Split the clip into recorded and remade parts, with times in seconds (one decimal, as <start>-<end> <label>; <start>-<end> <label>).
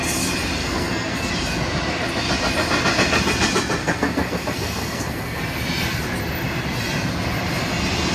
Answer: 0.0-0.6 recorded; 0.6-1.3 remade; 1.3-3.8 recorded; 3.8-5.4 remade; 5.4-8.1 recorded